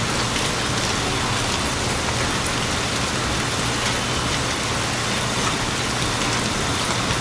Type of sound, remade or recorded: recorded